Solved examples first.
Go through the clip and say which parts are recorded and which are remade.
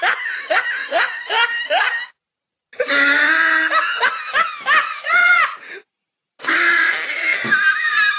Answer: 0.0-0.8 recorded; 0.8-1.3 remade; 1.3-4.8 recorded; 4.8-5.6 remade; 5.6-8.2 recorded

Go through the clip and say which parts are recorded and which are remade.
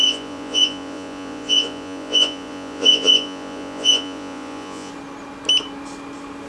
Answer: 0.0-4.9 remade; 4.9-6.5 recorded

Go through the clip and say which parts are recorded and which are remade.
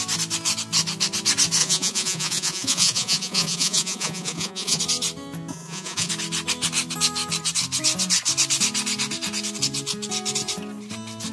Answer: 0.0-1.6 recorded; 1.6-4.8 remade; 4.8-5.5 recorded; 5.5-6.1 remade; 6.1-11.3 recorded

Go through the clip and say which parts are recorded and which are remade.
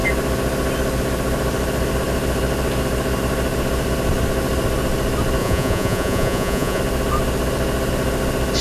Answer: 0.0-5.4 recorded; 5.4-6.8 remade; 6.8-8.6 recorded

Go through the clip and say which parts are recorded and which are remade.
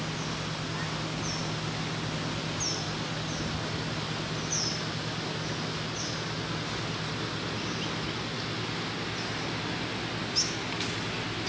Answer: 0.0-11.5 recorded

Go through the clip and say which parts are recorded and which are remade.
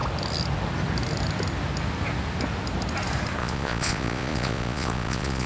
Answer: 0.0-3.4 recorded; 3.4-5.5 remade